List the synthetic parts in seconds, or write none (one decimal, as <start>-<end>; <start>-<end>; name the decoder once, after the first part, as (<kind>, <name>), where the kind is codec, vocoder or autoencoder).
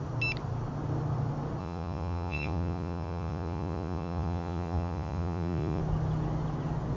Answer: 1.6-5.8 (vocoder, Vocos)